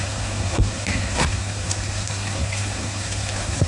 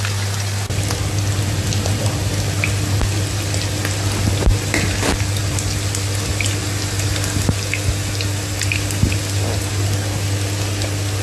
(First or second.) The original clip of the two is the second